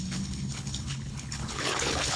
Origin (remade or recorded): remade